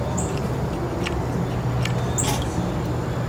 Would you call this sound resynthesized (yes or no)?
no